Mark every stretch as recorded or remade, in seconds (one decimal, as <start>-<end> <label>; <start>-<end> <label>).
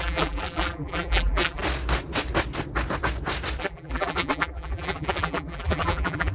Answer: 0.0-1.6 remade; 1.6-3.6 recorded; 3.6-6.3 remade